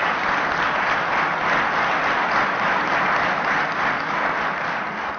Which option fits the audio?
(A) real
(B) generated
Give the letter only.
A